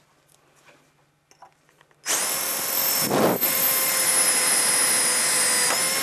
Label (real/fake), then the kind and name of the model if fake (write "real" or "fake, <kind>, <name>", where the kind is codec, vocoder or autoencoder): real